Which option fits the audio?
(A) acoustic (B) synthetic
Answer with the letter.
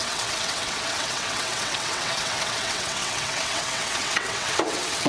B